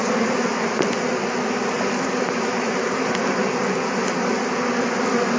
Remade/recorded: recorded